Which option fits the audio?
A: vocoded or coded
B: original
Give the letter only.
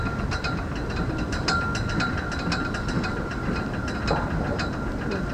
B